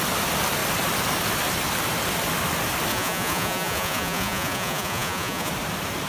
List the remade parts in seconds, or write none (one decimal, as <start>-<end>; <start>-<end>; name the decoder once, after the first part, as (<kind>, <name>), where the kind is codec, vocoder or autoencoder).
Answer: 2.9-5.5 (vocoder, Vocos)